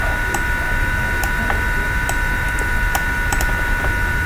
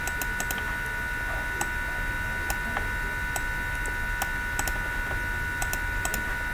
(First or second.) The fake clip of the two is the first